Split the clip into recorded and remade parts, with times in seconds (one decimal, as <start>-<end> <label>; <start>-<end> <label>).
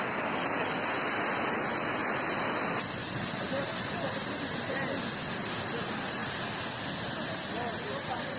0.0-8.4 recorded